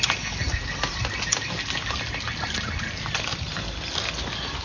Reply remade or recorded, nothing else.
recorded